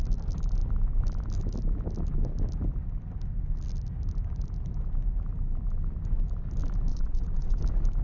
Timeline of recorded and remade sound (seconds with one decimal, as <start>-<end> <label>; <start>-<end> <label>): 0.0-6.9 recorded; 6.9-7.6 remade; 7.6-8.0 recorded